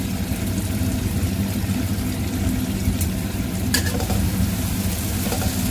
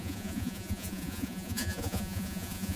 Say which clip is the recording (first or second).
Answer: first